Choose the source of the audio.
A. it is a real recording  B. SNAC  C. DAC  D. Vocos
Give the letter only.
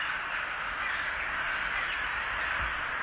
A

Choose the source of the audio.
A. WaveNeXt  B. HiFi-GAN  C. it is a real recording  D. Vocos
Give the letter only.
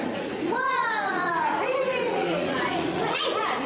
D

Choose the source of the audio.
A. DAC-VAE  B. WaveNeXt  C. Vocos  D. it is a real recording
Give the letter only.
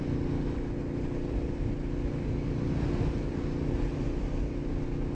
D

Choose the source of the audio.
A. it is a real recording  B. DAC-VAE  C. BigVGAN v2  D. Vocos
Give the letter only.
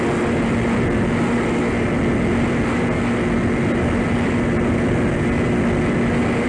A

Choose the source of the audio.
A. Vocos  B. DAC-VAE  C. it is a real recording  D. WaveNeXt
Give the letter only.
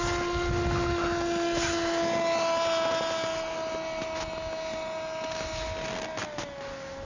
C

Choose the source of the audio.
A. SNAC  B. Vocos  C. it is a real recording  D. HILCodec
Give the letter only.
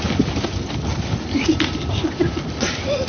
C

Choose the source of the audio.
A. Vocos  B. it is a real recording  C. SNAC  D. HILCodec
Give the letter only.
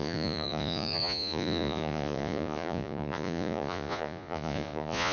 A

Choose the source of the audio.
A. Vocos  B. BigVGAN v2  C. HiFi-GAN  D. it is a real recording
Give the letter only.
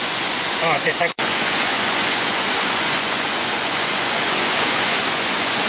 A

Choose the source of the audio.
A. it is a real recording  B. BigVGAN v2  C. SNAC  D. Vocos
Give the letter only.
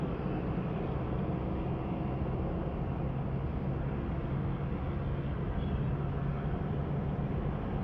A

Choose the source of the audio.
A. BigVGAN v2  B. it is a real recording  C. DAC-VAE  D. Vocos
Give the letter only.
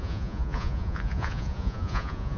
D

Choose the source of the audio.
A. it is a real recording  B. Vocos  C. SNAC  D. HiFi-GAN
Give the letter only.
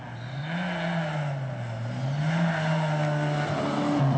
A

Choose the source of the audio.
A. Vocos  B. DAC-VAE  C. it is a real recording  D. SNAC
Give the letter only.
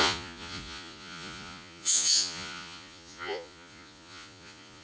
A